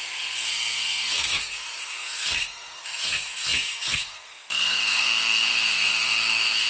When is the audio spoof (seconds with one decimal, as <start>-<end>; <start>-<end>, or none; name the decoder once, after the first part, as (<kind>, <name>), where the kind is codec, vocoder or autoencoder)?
0.0-6.7 (codec, SNAC)